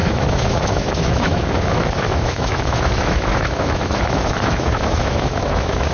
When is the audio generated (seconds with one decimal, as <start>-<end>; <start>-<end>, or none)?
0.0-5.9